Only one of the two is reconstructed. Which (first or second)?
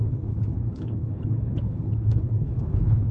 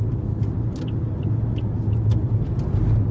first